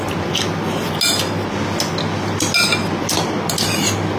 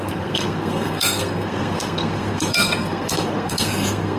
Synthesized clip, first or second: second